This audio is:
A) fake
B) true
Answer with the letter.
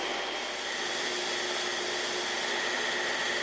B